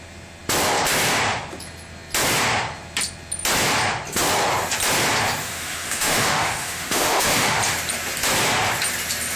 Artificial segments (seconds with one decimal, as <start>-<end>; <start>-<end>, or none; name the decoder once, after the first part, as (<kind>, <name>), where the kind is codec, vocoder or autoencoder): 5.4-7.6 (autoencoder, DAC-VAE)